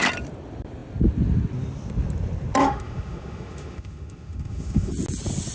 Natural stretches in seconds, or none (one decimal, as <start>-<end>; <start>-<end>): 0.0-2.6; 4.9-5.5